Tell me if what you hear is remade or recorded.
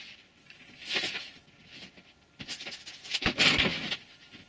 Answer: recorded